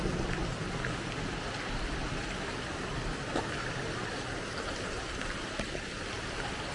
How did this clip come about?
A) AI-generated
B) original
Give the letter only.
B